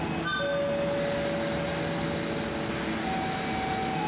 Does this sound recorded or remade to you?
recorded